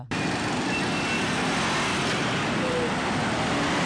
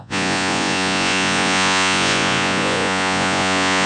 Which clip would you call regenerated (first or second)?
second